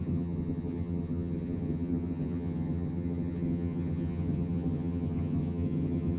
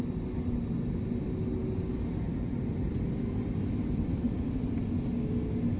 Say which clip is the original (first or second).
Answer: second